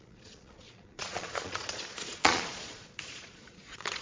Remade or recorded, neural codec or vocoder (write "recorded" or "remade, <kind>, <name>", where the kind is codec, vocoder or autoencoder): remade, vocoder, Vocos